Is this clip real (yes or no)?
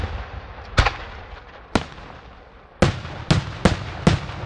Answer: yes